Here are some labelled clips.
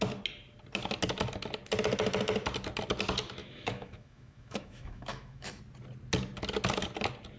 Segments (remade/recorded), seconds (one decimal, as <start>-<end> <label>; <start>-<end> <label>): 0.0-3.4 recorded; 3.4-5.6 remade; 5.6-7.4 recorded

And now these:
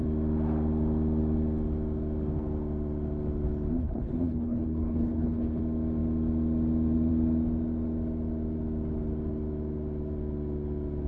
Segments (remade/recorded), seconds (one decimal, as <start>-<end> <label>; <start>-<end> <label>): 0.0-3.8 recorded; 3.8-5.6 remade; 5.6-11.1 recorded

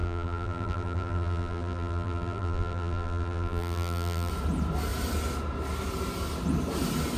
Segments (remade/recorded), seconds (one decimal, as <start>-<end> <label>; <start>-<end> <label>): 0.0-4.3 remade; 4.3-7.2 recorded

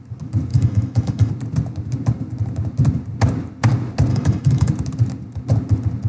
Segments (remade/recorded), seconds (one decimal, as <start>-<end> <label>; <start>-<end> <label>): 0.0-0.5 recorded; 0.5-1.3 remade; 1.3-4.1 recorded; 4.1-4.7 remade; 4.7-6.1 recorded